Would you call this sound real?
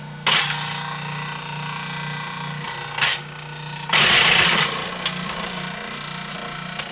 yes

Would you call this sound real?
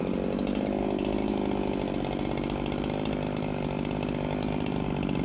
yes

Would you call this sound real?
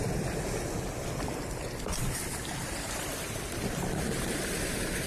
no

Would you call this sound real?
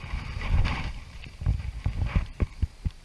no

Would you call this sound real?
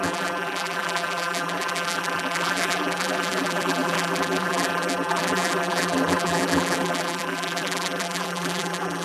no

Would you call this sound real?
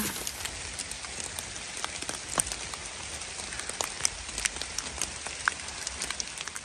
yes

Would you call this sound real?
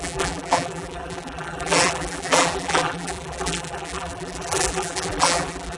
no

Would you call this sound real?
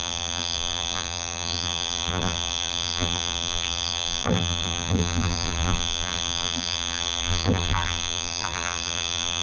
no